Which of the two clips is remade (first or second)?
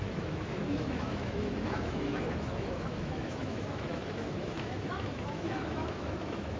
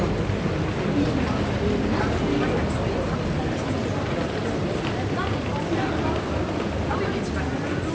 first